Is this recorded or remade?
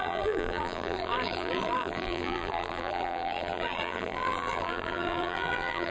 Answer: remade